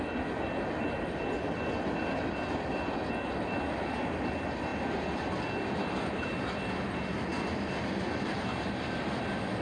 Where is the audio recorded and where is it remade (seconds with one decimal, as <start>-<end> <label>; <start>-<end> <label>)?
0.0-9.6 recorded

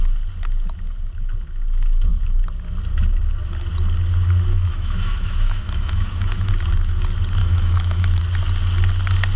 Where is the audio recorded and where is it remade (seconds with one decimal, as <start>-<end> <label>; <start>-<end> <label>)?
0.0-4.5 recorded; 4.5-6.5 remade; 6.5-7.4 recorded; 7.4-8.2 remade; 8.2-9.4 recorded

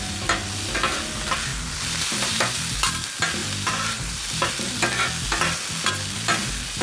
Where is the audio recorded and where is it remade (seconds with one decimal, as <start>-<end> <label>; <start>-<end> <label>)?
0.0-3.4 recorded; 3.4-4.5 remade; 4.5-6.8 recorded

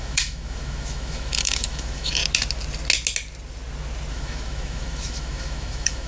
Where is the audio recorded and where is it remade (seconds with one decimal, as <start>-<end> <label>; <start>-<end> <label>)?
0.0-2.2 remade; 2.2-4.1 recorded; 4.1-6.1 remade

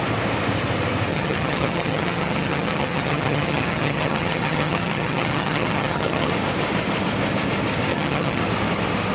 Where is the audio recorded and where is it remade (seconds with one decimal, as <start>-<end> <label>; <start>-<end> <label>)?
0.0-1.1 recorded; 1.1-6.3 remade; 6.3-7.9 recorded; 7.9-8.4 remade; 8.4-9.1 recorded

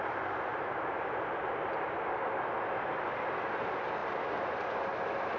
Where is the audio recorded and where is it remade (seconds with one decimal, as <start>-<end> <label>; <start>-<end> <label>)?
0.0-5.4 recorded

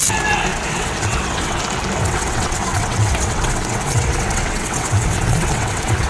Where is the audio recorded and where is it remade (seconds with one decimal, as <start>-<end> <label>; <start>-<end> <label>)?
0.0-0.5 recorded; 0.5-1.6 remade; 1.6-2.0 recorded; 2.0-6.1 remade